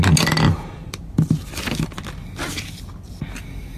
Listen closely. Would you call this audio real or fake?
real